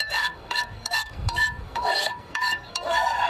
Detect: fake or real fake